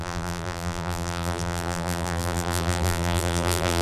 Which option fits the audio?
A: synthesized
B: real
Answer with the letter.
A